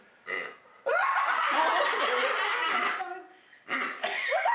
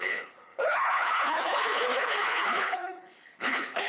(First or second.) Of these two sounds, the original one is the first